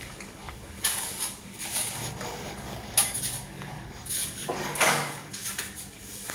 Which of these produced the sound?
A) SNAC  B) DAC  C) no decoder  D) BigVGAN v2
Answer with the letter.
B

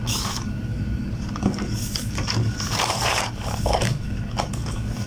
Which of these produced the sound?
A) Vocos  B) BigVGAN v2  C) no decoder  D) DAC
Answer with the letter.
D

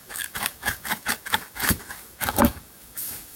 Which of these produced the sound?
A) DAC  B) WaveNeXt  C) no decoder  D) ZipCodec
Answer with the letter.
A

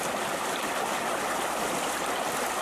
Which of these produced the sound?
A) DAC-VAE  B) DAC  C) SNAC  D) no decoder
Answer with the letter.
D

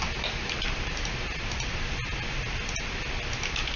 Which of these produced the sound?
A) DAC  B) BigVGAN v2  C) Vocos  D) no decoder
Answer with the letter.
D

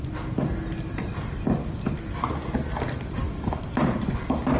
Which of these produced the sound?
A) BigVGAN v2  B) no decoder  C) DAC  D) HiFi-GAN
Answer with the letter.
B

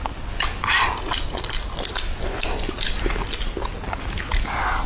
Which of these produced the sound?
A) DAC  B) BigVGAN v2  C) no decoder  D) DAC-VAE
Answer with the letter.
C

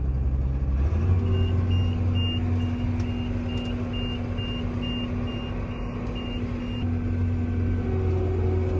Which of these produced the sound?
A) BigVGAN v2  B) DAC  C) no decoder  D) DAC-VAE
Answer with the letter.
C